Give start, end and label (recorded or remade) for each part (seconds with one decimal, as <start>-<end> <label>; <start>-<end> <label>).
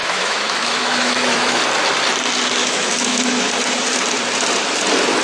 0.0-1.6 remade; 1.6-2.6 recorded; 2.6-3.5 remade; 3.5-5.2 recorded